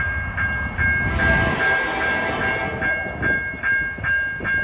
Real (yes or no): yes